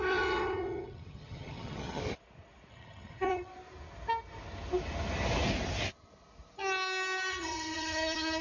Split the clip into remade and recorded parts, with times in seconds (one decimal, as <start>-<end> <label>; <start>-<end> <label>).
0.0-2.0 remade; 2.0-2.7 recorded; 2.7-3.5 remade; 3.5-7.3 recorded; 7.3-8.4 remade